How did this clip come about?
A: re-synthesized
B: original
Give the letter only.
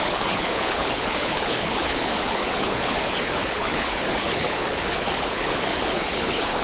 A